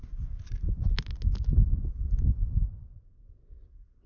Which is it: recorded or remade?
recorded